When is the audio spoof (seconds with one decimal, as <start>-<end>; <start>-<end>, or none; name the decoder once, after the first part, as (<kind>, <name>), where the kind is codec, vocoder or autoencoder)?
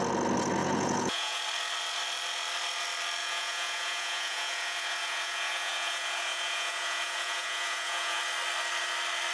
0.6-1.4 (vocoder, Vocos); 3.2-8.2